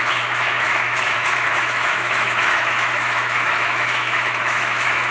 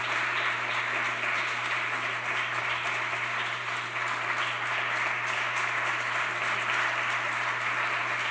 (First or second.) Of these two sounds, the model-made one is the first